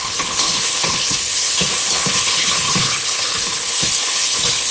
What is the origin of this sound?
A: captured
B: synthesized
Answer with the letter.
B